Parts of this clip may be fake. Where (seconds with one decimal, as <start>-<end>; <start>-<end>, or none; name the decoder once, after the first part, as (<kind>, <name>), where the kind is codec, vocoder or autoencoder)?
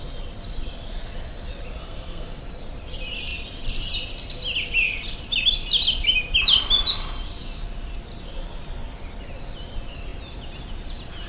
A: 1.8-2.4 (codec, SNAC)